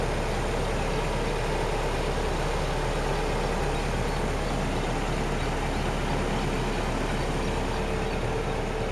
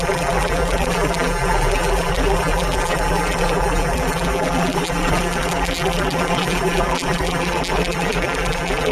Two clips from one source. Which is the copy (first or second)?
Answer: second